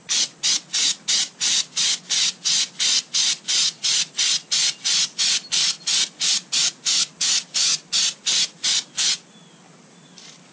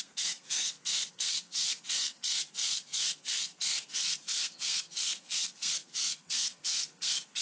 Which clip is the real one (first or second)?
first